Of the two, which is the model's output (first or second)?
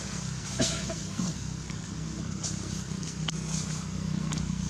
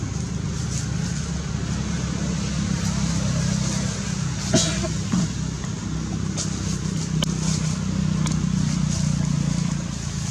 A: first